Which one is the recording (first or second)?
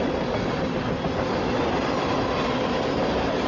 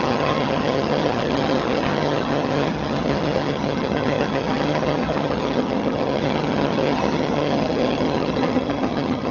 first